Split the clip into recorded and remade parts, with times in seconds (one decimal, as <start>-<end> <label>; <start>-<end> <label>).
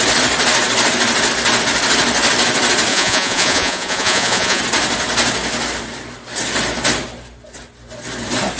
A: 0.0-2.9 recorded; 2.9-4.6 remade; 4.6-8.6 recorded